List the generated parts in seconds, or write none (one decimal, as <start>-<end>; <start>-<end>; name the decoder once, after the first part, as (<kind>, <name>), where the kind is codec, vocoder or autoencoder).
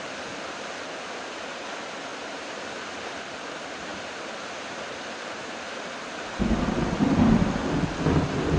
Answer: 2.1-3.2 (vocoder, BigVGAN v2)